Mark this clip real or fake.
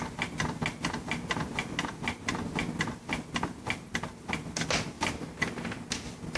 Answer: real